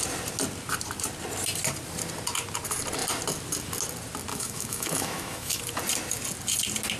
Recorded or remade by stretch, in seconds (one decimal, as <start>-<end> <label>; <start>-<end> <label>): 0.0-4.3 recorded; 4.3-5.6 remade; 5.6-7.0 recorded